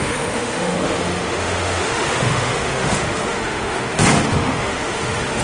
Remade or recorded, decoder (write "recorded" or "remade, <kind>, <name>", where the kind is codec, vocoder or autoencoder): remade, autoencoder, DAC-VAE